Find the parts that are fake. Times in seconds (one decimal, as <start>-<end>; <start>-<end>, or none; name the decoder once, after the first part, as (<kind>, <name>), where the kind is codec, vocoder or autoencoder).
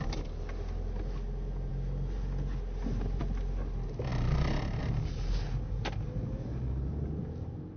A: none